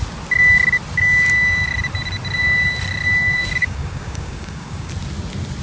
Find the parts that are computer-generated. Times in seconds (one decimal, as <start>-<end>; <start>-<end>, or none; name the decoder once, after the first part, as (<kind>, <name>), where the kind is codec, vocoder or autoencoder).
3.6-4.9 (codec, DAC)

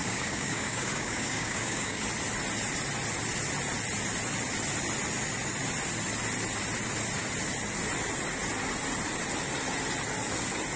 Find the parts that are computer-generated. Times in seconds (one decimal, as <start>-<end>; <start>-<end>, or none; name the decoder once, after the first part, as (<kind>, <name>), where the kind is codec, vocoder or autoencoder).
0.0-2.0 (codec, DAC)